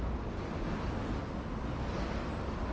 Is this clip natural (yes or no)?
yes